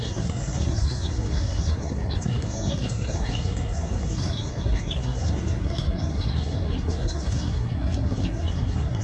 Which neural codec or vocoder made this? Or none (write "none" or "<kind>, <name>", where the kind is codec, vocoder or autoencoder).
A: codec, SNAC